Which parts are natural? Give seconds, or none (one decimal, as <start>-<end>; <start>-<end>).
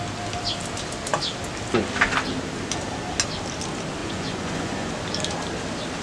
0.0-4.0; 4.9-6.0